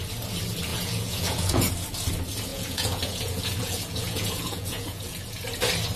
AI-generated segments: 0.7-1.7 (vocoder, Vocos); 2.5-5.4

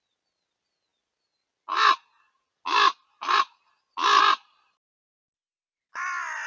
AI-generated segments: none

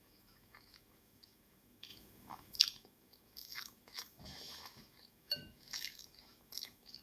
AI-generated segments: 0.0-7.0 (autoencoder, DAC-VAE)

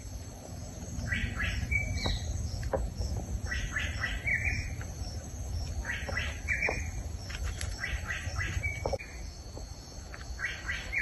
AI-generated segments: 1.2-2.1 (vocoder, BigVGAN v2); 4.3-8.6

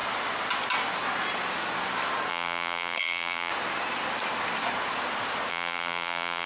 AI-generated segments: 2.3-3.5 (vocoder, BigVGAN v2); 5.5-6.5

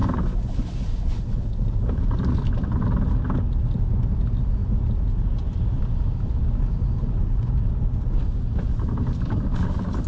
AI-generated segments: none

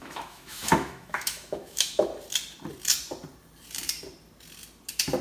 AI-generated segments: 0.0-2.1 (autoencoder, DAC-VAE)

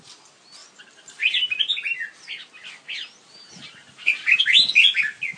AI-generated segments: 0.6-1.6 (vocoder, BigVGAN v2); 2.6-4.4